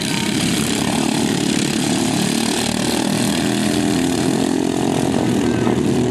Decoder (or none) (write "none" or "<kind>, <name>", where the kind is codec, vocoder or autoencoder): none